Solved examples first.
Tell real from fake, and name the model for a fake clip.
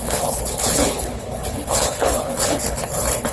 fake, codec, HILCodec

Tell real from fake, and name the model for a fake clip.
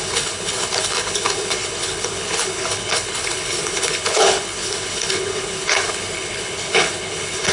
fake, codec, HILCodec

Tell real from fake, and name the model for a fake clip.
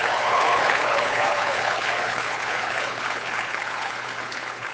fake, codec, HILCodec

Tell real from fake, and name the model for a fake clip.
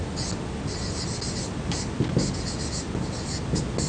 real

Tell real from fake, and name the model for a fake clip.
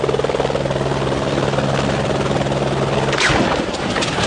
real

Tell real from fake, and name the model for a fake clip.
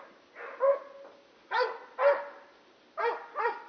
real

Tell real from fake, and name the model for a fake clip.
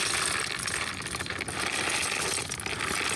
real